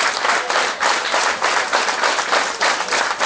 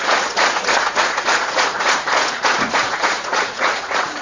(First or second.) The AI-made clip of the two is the second